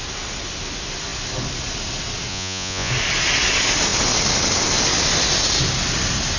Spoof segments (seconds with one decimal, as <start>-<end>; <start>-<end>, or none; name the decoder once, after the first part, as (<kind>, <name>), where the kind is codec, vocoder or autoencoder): 2.3-2.9 (vocoder, Vocos)